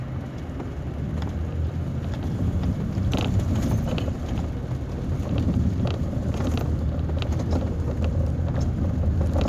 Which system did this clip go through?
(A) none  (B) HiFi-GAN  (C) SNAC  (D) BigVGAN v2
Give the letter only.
A